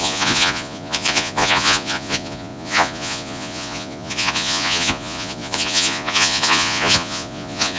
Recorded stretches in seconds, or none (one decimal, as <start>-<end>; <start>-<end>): none